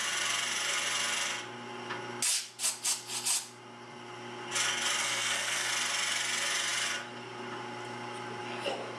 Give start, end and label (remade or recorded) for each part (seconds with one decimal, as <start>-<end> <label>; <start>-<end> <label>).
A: 0.0-5.0 recorded; 5.0-5.7 remade; 5.7-9.0 recorded